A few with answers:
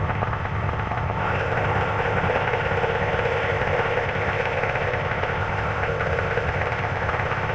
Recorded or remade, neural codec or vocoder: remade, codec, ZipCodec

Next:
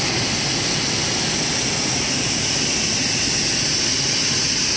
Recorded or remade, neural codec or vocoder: recorded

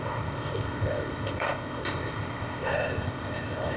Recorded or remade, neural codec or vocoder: remade, codec, ZipCodec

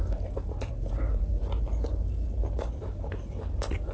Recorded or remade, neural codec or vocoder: recorded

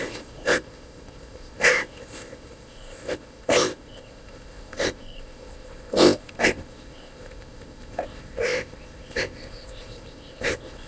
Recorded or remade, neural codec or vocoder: remade, codec, ZipCodec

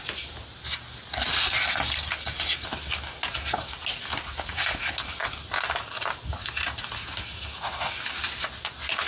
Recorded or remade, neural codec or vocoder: recorded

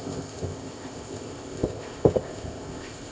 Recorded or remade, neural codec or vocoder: remade, codec, ZipCodec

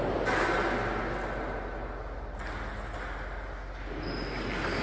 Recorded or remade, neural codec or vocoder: recorded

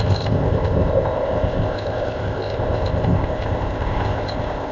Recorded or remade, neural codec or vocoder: remade, codec, ZipCodec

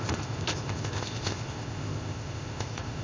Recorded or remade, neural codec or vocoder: remade, codec, ZipCodec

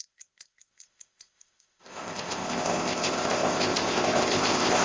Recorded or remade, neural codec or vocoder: remade, codec, ZipCodec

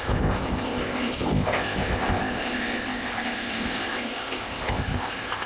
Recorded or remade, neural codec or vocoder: remade, codec, ZipCodec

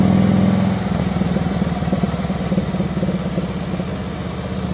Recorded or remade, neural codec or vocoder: recorded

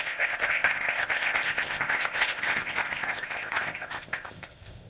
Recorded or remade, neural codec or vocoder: remade, codec, ZipCodec